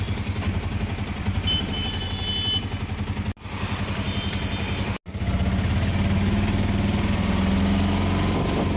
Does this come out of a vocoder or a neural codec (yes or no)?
no